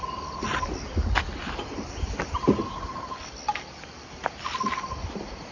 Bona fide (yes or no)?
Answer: yes